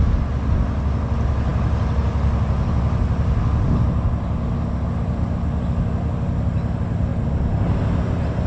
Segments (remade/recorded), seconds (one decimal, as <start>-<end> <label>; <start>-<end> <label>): 0.0-8.5 recorded